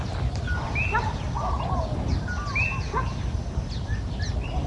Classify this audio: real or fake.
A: real